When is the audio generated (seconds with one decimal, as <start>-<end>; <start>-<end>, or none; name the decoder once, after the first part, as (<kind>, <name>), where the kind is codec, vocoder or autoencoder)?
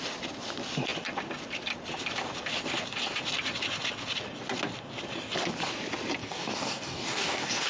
6.2-7.7 (codec, DAC)